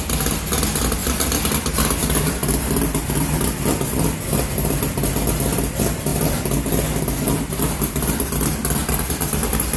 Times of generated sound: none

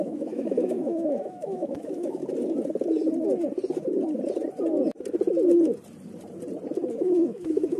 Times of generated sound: 0.0-2.2; 6.9-7.8

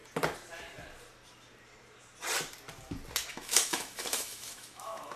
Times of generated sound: 3.3-5.2

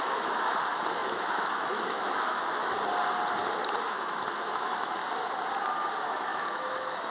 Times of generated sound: 0.0-2.6; 3.8-5.0; 5.9-7.1

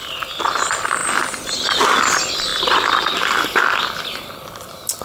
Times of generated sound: none

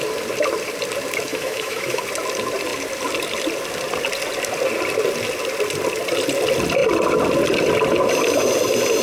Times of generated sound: 1.3-2.0

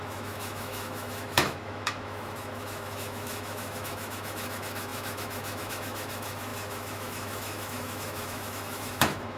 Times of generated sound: 0.0-9.4

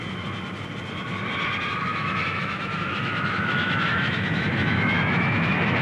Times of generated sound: 1.9-5.8